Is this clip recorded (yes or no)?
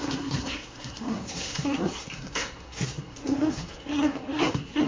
no